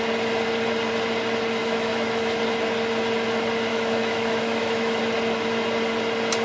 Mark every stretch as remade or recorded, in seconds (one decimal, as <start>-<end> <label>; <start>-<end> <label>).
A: 0.0-1.6 recorded; 1.6-2.4 remade; 2.4-3.7 recorded; 3.7-5.0 remade; 5.0-6.4 recorded